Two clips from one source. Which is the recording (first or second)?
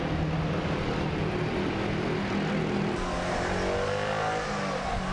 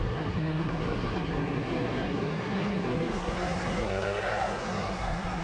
first